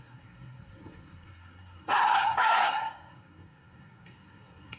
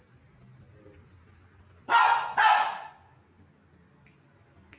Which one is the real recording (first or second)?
second